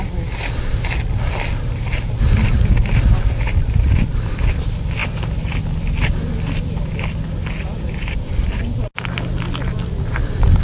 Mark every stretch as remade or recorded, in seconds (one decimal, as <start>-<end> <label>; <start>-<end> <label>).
0.0-10.6 recorded